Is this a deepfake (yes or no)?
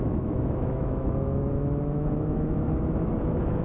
yes